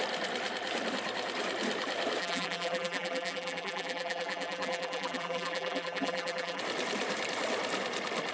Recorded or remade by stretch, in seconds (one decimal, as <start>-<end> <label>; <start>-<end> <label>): 0.0-2.2 recorded; 2.2-6.6 remade; 6.6-8.3 recorded